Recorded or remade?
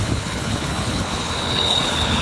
remade